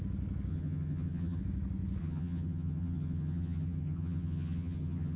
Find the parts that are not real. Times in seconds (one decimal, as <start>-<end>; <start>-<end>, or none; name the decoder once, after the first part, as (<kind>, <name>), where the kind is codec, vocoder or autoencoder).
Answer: 0.5-1.4 (vocoder, HiFi-GAN); 2.0-5.2